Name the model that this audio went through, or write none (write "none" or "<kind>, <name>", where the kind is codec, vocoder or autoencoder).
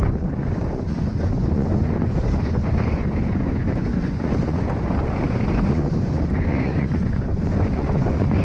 vocoder, Vocos